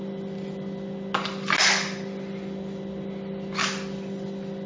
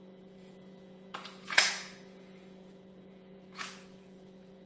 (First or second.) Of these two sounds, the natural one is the first